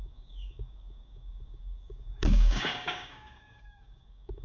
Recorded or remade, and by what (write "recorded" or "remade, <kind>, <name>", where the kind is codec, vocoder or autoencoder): remade, codec, DAC